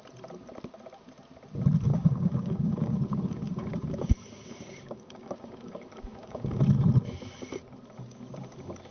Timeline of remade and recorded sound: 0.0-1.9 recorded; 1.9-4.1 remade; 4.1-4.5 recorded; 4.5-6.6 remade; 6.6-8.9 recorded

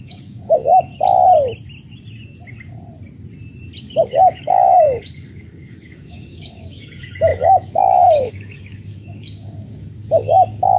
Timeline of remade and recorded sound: 0.0-0.9 remade; 0.9-3.8 recorded; 3.8-10.8 remade

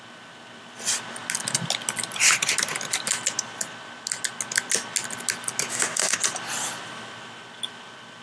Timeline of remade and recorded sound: 0.0-5.7 recorded; 5.7-6.2 remade; 6.2-8.2 recorded

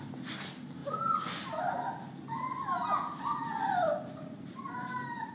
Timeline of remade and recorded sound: 0.0-5.3 recorded

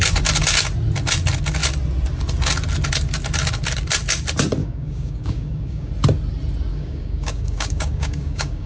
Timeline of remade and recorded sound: 0.0-4.6 recorded; 4.6-5.9 remade; 5.9-6.7 recorded; 6.7-8.7 remade